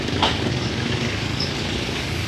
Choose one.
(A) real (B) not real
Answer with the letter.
B